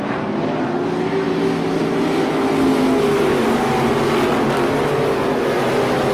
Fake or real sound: real